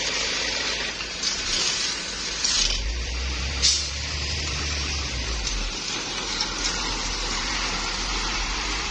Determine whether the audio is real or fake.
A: fake